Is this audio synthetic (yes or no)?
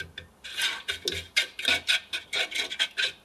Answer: no